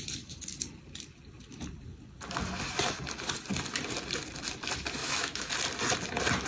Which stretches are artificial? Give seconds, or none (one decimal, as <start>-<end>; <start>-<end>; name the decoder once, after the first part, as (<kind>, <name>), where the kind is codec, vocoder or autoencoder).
5.0-5.5 (autoencoder, DAC-VAE)